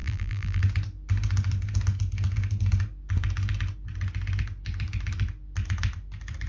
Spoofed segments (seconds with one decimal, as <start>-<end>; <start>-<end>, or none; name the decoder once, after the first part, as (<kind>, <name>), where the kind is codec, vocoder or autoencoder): 0.0-0.6 (vocoder, BigVGAN v2)